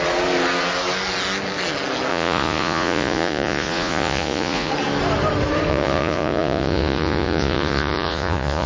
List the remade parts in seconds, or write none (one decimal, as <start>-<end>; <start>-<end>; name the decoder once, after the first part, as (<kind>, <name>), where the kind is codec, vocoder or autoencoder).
2.1-4.7 (vocoder, Vocos); 5.7-8.7